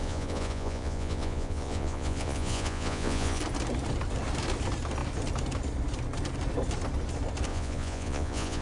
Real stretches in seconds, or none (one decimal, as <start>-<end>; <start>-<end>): 3.4-7.5